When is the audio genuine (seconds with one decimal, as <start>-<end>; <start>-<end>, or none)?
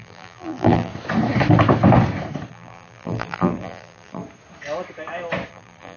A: 0.9-2.5; 4.2-5.5